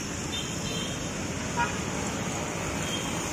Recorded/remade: recorded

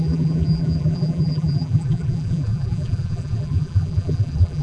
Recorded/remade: remade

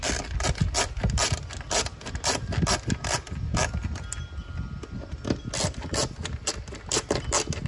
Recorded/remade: recorded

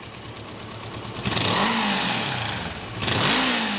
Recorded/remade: recorded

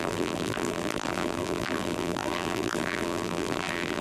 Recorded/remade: remade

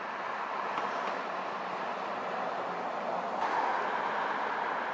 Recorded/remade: recorded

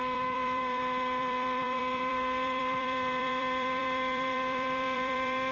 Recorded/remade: remade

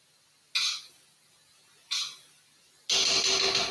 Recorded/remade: recorded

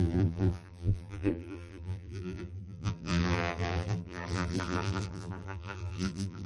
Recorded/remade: remade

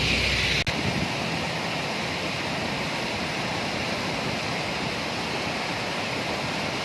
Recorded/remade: recorded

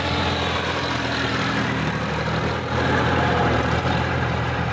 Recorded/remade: remade